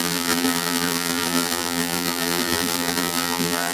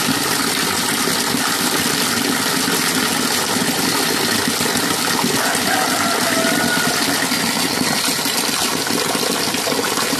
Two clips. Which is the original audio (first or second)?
second